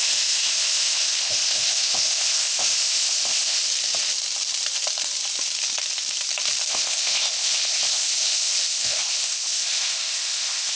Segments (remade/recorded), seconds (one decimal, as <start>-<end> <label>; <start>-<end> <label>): 0.0-3.6 remade; 3.6-6.7 recorded; 6.7-10.8 remade